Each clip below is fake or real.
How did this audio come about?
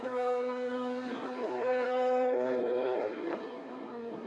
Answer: fake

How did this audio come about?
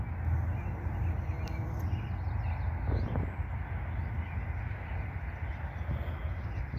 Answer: real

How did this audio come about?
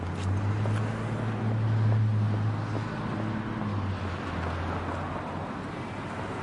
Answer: real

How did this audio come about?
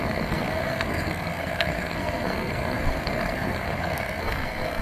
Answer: fake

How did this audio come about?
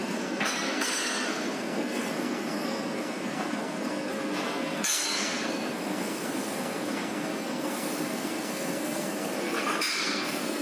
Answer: fake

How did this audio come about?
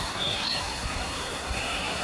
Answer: fake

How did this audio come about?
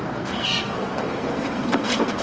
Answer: fake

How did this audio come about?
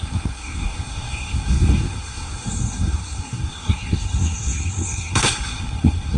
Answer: fake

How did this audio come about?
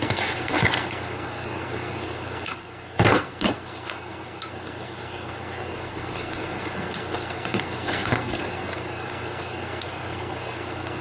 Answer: fake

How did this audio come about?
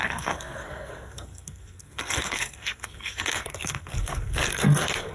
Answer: fake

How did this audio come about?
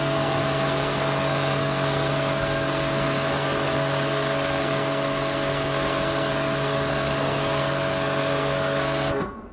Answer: fake